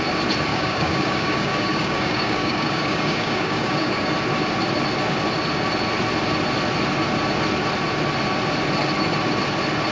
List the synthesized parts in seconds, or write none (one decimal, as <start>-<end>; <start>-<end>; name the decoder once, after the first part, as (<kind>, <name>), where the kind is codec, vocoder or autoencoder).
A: 0.5-4.1 (codec, DAC)